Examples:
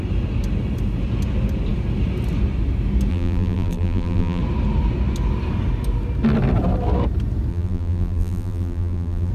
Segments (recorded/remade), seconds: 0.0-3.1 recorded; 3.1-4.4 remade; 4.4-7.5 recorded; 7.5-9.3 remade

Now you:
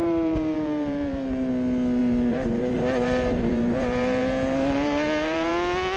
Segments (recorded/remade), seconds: 0.0-1.5 remade; 1.5-2.0 recorded; 2.0-5.5 remade; 5.5-6.0 recorded

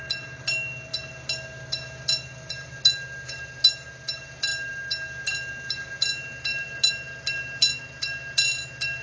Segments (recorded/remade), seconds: 0.0-9.0 recorded

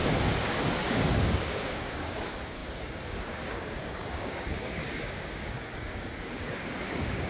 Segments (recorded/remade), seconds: 0.0-0.6 recorded; 0.6-7.3 remade

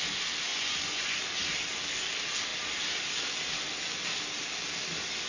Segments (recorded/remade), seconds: 0.0-0.5 recorded; 0.5-1.2 remade; 1.2-5.3 recorded